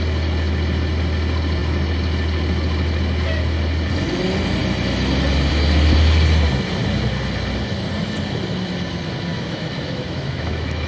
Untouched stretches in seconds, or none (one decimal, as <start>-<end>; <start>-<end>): 0.0-9.3